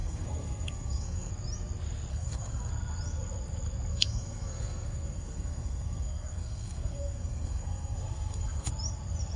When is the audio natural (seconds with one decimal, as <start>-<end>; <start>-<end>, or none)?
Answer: 1.3-2.1; 2.7-3.9; 8.7-9.4

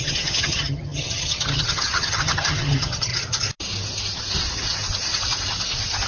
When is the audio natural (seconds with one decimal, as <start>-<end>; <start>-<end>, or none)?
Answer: 3.1-6.1

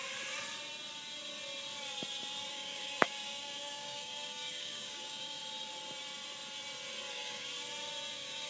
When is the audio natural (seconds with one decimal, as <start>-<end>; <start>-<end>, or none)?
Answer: 0.0-2.5; 5.4-7.1; 7.5-8.1

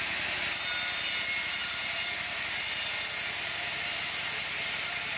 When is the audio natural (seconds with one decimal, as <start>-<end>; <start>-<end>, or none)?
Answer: 0.0-5.2

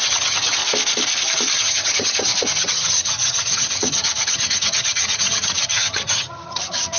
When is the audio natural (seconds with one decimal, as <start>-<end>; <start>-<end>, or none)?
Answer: 0.6-1.6

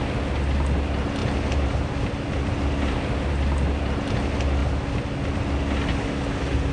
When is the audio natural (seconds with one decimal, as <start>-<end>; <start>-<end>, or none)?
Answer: 0.0-1.2; 3.3-6.7

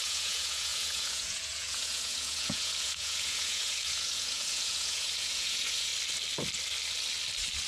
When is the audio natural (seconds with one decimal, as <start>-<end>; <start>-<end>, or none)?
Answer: 5.9-7.7

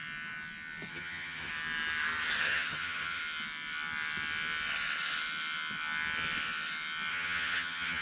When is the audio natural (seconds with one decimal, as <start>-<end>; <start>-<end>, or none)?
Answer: 0.0-0.9; 1.5-2.4; 3.2-7.1